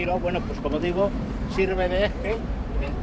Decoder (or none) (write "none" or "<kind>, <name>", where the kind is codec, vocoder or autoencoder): vocoder, BigVGAN v2